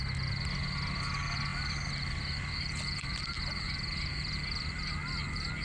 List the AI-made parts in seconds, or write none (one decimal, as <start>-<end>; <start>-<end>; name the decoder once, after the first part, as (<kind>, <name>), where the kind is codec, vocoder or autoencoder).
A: 1.5-4.9 (vocoder, BigVGAN v2)